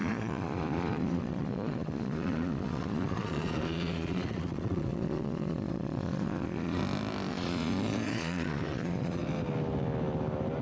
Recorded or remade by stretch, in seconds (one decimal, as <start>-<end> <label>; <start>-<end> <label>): 0.0-6.8 remade; 6.8-7.3 recorded; 7.3-9.2 remade; 9.2-10.6 recorded